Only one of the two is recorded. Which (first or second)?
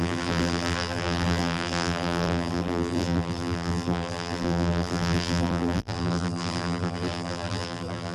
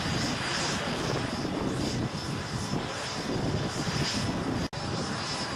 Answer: second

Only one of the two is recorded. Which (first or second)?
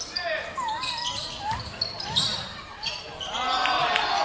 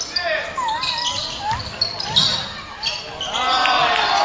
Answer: second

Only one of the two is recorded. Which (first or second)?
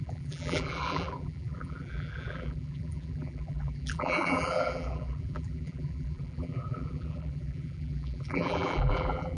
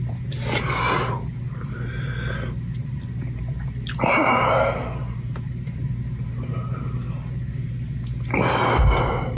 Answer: second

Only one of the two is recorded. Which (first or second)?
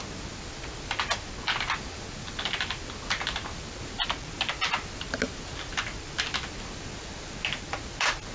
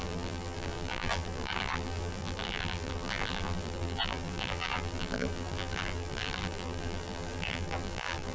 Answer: first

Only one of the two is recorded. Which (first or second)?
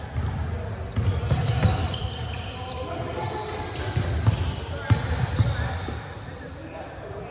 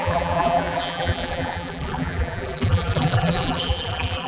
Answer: first